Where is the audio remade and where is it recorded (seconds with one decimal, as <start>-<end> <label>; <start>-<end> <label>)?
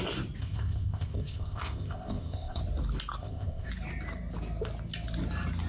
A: 0.0-0.4 recorded; 0.4-2.6 remade; 2.6-3.2 recorded; 3.2-3.7 remade; 3.7-5.7 recorded